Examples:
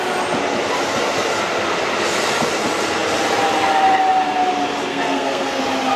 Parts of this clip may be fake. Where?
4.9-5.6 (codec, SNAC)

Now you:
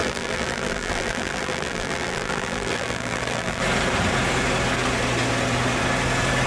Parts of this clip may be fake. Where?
0.0-3.6 (vocoder, BigVGAN v2)